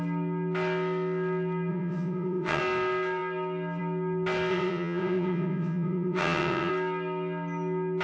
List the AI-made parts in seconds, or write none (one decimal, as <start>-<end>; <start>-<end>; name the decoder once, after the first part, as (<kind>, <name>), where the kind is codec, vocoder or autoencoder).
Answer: 1.7-2.6 (vocoder, WaveNeXt); 4.5-6.7